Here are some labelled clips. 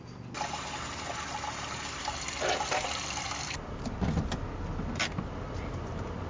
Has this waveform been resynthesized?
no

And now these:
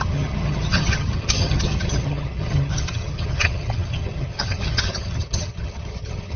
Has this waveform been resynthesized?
yes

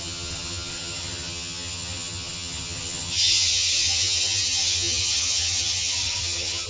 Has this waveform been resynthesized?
yes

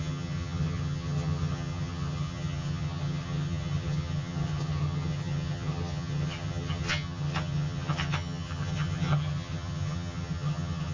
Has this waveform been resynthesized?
yes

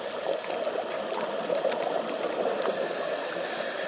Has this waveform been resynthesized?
no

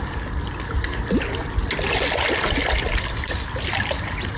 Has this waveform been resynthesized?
no